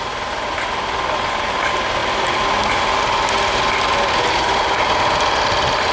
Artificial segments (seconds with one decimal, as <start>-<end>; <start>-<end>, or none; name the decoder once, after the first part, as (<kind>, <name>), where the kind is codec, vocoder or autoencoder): none